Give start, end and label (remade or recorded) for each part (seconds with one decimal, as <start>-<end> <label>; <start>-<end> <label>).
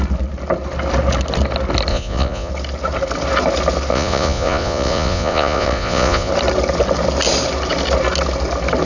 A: 0.0-1.9 recorded; 1.9-2.5 remade; 2.5-3.9 recorded; 3.9-6.3 remade; 6.3-8.9 recorded